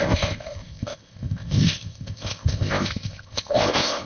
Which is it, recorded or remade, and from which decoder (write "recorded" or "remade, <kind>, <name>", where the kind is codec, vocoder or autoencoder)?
remade, codec, ZipCodec